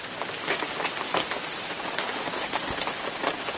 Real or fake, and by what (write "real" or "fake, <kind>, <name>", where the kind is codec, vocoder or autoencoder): real